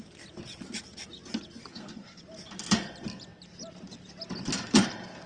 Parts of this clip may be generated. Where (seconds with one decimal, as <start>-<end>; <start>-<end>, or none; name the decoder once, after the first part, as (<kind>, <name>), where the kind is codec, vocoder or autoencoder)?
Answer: 1.7-2.2 (codec, SNAC)